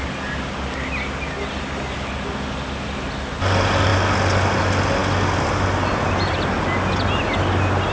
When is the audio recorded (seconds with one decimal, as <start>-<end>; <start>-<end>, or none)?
0.0-7.9